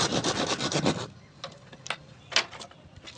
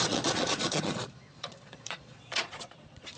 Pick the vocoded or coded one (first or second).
second